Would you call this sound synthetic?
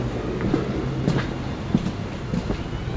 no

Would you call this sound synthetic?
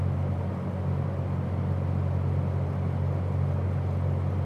no